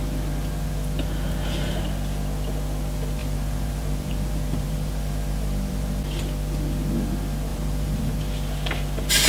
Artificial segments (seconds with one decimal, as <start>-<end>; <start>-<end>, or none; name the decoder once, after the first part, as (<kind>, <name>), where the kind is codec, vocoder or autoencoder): 3.2-6.0 (vocoder, BigVGAN v2); 7.5-8.0